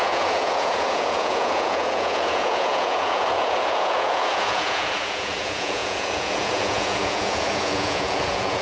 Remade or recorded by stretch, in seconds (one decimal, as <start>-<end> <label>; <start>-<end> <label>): 0.0-8.6 remade